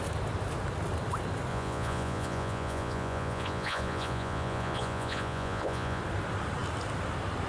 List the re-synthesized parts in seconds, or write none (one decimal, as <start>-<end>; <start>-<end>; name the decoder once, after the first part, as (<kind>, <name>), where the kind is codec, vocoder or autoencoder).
1.5-6.0 (vocoder, Vocos)